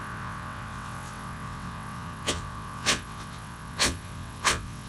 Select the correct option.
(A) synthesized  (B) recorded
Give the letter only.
A